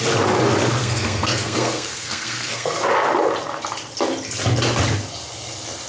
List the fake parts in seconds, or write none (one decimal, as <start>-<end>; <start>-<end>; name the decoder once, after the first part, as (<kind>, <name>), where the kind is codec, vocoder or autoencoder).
0.8-2.8 (codec, SNAC)